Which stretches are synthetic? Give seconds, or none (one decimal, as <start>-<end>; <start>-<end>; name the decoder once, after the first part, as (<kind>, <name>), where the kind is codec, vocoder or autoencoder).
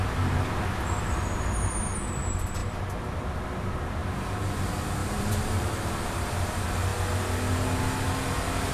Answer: 4.0-4.6 (vocoder, BigVGAN v2); 5.0-5.7